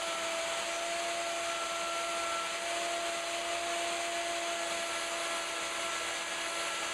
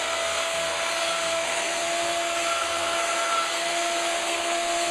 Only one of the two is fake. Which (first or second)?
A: second